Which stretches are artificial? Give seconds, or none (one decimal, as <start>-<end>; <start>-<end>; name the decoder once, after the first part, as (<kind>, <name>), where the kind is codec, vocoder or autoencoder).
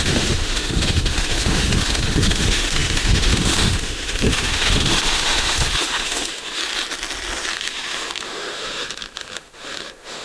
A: 0.0-6.6 (autoencoder, DAC-VAE); 7.5-10.2